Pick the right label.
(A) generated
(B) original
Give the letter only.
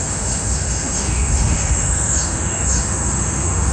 A